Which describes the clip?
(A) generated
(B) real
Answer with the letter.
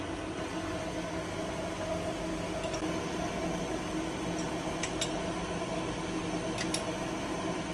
B